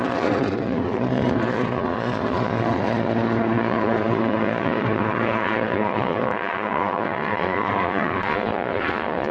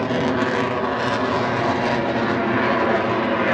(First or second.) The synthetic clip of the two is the first